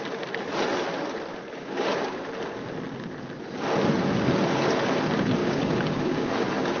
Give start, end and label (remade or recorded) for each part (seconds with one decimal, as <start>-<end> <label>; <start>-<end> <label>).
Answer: 0.0-1.6 recorded; 1.6-2.2 remade; 2.2-5.4 recorded; 5.4-6.3 remade; 6.3-6.8 recorded